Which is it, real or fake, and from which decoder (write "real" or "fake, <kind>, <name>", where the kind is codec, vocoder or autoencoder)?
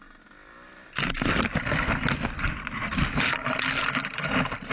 real